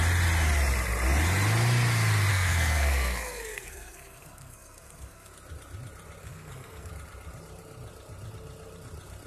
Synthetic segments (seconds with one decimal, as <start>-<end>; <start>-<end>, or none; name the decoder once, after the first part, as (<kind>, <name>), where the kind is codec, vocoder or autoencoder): 2.3-5.3 (codec, SNAC); 6.2-6.9